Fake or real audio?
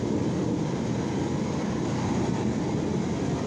real